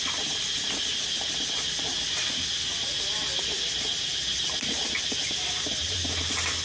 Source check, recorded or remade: recorded